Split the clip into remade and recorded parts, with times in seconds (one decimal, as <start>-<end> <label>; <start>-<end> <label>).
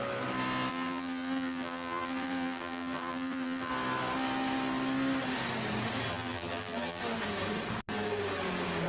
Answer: 0.0-0.7 recorded; 0.7-3.7 remade; 3.7-6.1 recorded; 6.1-7.0 remade; 7.0-8.9 recorded